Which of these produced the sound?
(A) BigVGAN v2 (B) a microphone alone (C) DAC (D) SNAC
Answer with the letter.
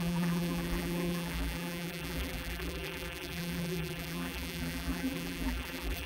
A